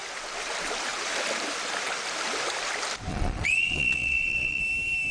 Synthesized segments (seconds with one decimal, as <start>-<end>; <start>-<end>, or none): 3.1-4.6